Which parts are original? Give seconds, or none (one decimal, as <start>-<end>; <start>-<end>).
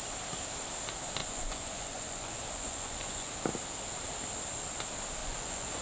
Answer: 0.0-1.2; 3.3-5.2